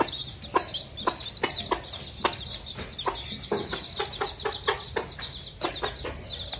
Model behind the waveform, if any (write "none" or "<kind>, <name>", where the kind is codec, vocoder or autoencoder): none